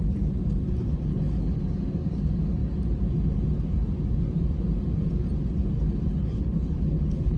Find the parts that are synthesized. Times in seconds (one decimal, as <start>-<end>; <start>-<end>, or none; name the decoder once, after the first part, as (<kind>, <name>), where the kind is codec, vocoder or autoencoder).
1.1-1.6 (codec, HILCodec); 6.1-7.4